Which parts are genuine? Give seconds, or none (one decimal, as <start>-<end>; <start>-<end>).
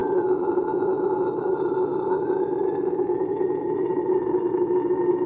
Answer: 0.0-5.3